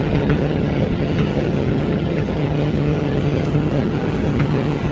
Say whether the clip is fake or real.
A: fake